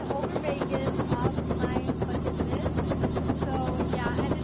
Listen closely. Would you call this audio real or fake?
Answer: real